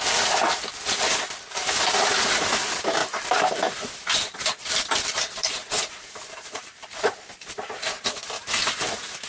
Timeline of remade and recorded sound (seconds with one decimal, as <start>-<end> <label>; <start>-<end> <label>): 0.0-3.0 recorded; 3.0-8.2 remade; 8.2-9.3 recorded